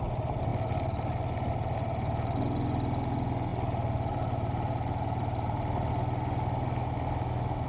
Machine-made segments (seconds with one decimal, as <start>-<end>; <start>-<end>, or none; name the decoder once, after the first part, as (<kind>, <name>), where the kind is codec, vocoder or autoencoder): none